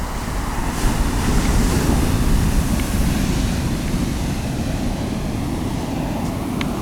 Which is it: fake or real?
real